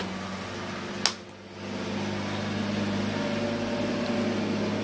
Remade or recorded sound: recorded